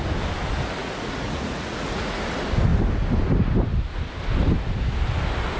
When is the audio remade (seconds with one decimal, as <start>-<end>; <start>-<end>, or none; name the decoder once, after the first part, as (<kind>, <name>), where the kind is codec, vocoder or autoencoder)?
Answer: 0.8-2.2 (vocoder, Vocos)